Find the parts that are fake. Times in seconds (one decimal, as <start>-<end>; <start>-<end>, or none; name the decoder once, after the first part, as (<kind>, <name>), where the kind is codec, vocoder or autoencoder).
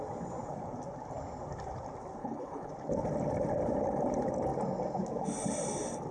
2.2-2.7 (codec, HILCodec)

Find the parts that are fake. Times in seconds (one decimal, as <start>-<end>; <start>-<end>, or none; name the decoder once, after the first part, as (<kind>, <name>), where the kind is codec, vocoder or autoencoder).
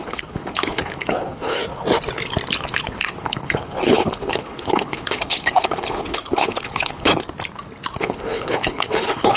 0.0-1.6 (codec, HILCodec); 2.9-7.1; 8.0-9.4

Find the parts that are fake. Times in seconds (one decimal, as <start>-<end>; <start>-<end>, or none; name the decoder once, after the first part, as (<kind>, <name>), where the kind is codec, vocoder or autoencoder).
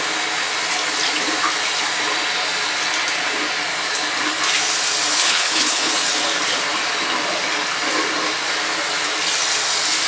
5.1-5.9 (codec, HILCodec)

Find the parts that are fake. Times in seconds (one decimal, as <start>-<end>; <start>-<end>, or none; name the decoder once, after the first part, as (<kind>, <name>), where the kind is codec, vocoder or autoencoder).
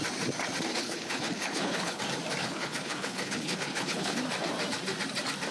0.7-2.0 (codec, HILCodec); 2.4-4.2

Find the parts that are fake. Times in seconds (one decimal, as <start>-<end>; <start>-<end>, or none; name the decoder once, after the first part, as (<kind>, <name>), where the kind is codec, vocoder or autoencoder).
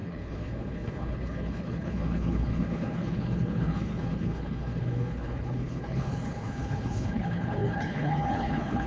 0.0-8.9 (codec, HILCodec)